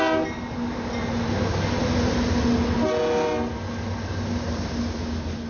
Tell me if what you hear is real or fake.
real